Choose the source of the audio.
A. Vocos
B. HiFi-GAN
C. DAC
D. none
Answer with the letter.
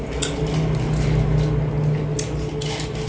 D